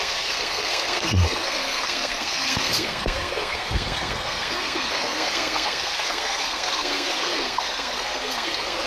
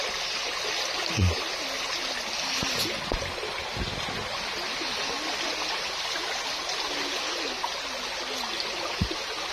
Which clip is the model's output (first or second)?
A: first